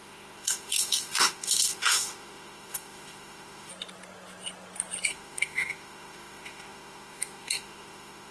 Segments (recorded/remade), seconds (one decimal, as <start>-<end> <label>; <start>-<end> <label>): 0.0-3.7 remade; 3.7-5.1 recorded; 5.1-8.3 remade